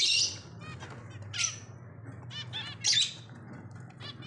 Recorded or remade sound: recorded